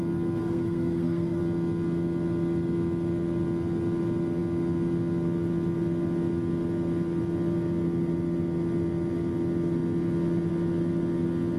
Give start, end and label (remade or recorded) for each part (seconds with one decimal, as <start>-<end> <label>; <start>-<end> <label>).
0.0-0.4 recorded; 0.4-1.4 remade; 1.4-11.6 recorded